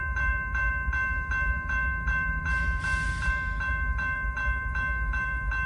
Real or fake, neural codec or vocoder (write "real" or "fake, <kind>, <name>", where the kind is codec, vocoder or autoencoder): fake, vocoder, BigVGAN v2